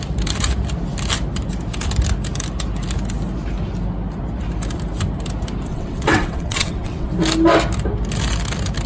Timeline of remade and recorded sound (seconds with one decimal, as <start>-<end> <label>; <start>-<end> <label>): 0.0-5.7 recorded; 5.7-7.1 remade; 7.1-8.9 recorded